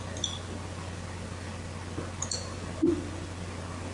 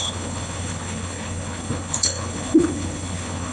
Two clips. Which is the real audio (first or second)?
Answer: first